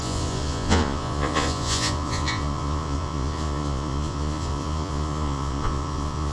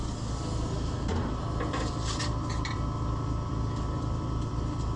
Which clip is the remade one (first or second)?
first